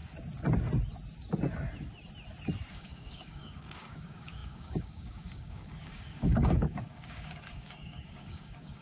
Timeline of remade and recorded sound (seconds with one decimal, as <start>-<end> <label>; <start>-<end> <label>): 0.0-2.7 recorded; 2.7-8.8 remade